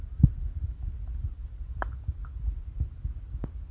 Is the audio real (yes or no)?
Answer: yes